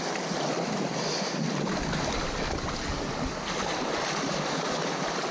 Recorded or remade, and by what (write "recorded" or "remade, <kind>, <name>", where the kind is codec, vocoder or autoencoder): recorded